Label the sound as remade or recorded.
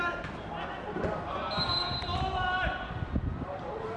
recorded